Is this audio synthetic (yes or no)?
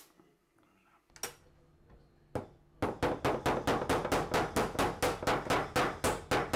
no